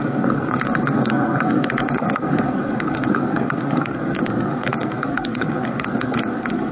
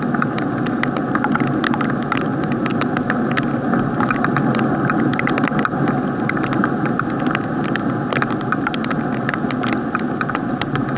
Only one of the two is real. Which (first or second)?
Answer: second